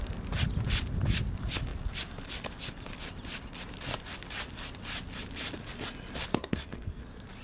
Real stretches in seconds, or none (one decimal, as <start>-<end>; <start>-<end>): 0.0-6.3; 7.0-7.4

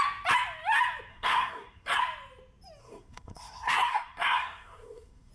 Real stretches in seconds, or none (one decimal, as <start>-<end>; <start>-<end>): 0.0-1.1; 2.0-2.8